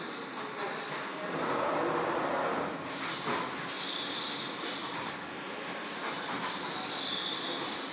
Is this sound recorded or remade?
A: recorded